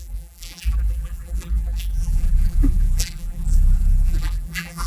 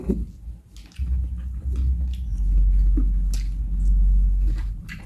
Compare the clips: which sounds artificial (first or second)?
first